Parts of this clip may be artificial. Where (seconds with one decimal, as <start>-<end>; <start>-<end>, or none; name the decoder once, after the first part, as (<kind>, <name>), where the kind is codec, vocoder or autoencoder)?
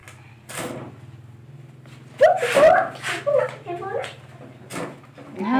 none